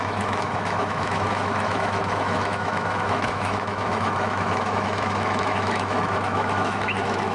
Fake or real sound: fake